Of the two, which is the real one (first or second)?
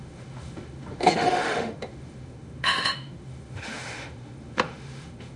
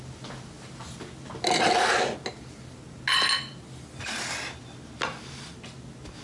second